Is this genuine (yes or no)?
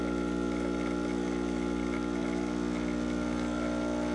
yes